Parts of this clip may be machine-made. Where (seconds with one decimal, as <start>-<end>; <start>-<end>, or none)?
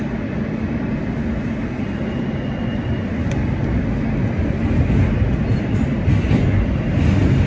none